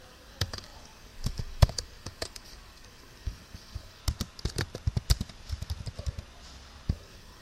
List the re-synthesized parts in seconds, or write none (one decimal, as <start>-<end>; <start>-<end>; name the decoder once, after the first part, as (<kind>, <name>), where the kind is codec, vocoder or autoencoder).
0.0-4.0 (codec, DAC); 6.9-7.4